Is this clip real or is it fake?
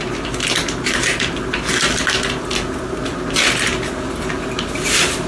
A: real